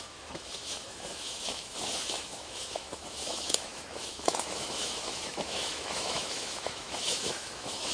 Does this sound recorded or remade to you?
remade